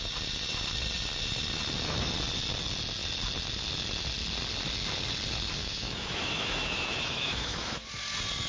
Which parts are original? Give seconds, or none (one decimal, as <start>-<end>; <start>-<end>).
0.0-5.6; 7.8-8.5